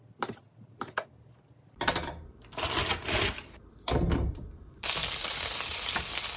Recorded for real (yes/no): no